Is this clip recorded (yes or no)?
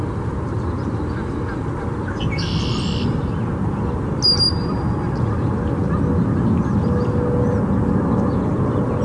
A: yes